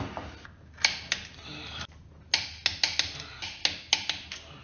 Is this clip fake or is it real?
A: real